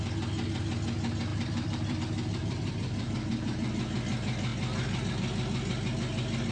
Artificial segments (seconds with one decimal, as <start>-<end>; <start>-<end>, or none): 1.3-2.0; 2.4-3.7